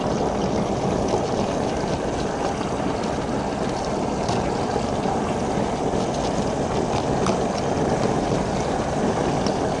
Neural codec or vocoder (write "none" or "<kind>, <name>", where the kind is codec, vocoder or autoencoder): none